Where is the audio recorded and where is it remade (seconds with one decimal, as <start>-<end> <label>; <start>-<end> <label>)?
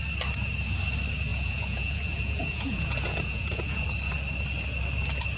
0.0-1.3 recorded; 1.3-3.8 remade; 3.8-5.4 recorded